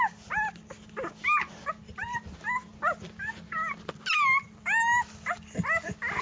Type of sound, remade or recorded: recorded